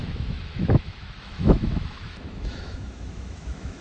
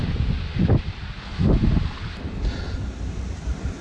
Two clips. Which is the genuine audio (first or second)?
second